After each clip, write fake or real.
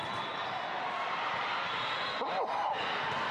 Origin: real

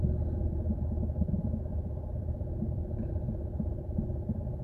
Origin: real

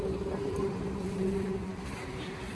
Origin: fake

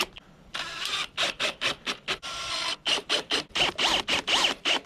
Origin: fake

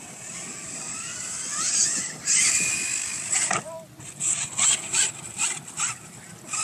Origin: real